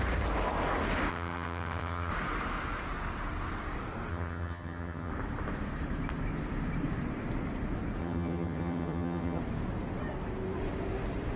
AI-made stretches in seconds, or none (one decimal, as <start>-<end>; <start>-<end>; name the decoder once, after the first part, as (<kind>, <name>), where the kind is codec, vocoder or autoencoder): 1.1-2.1 (vocoder, HiFi-GAN); 4.1-5.1; 8.0-9.4